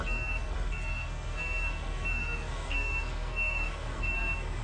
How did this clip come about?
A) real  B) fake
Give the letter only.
B